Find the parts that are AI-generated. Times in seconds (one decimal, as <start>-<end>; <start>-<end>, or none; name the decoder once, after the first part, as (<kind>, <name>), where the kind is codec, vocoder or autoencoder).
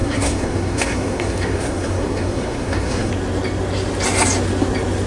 0.0-3.1 (codec, SNAC)